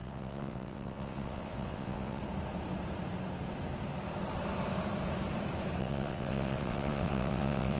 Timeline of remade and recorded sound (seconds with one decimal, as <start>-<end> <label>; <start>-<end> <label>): 0.0-2.2 remade; 2.2-5.8 recorded; 5.8-7.8 remade